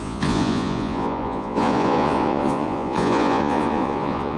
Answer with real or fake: fake